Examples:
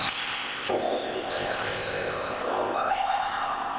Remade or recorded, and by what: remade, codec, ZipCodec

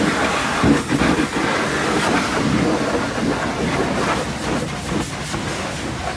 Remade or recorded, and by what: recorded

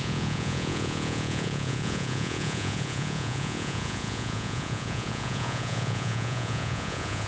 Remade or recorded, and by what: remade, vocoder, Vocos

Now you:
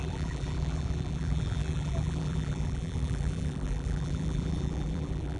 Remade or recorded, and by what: remade, vocoder, BigVGAN v2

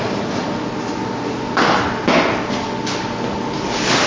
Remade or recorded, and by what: recorded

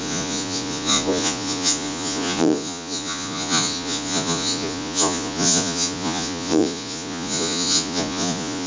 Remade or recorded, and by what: remade, vocoder, Vocos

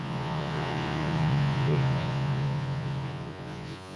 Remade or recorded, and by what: remade, vocoder, Vocos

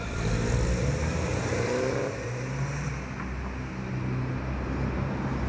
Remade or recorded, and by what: recorded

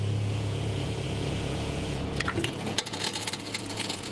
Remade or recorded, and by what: remade, vocoder, Vocos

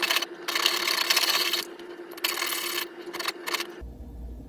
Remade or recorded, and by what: recorded